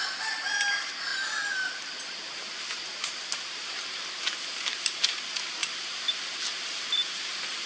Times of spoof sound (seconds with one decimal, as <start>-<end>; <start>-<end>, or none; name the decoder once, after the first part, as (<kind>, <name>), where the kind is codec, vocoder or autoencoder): none